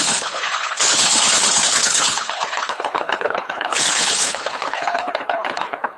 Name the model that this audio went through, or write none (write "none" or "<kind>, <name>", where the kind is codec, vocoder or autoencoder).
codec, HILCodec